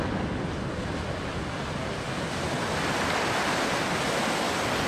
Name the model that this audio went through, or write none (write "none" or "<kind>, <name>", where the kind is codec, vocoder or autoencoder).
none